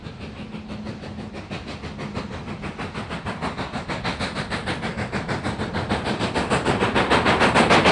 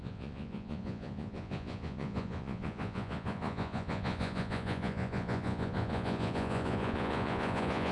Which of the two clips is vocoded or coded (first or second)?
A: second